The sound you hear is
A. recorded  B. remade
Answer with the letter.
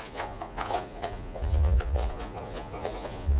B